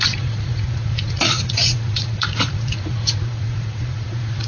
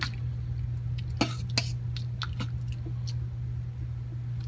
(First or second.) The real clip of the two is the second